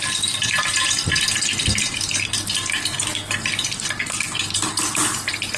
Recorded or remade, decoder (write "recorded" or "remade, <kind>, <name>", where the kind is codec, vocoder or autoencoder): recorded